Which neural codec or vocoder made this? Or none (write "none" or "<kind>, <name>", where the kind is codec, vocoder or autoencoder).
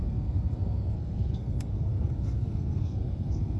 codec, SNAC